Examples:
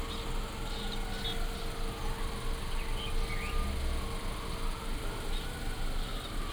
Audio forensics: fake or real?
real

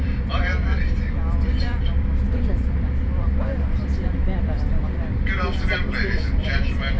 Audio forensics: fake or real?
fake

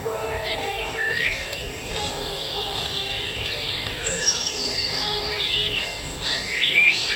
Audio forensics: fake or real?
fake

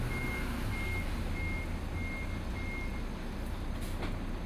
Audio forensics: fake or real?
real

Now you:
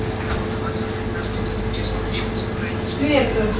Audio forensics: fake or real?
real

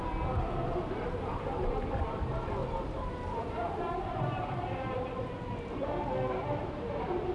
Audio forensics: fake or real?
real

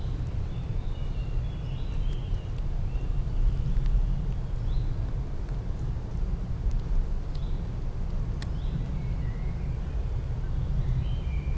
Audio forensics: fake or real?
real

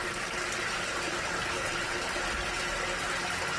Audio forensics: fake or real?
real